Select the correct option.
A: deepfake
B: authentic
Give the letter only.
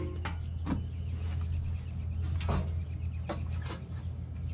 B